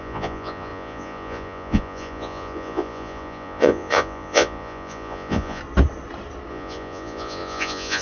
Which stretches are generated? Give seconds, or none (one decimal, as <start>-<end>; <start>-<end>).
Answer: 0.0-5.6; 6.5-8.0